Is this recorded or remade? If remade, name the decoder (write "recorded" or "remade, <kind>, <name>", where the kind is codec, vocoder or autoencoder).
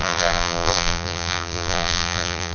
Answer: remade, vocoder, BigVGAN v2